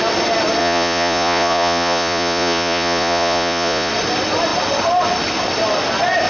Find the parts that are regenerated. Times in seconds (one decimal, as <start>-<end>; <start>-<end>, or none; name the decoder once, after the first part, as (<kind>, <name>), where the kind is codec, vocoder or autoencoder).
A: 0.6-3.9 (vocoder, Vocos)